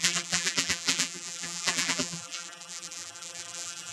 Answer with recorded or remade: remade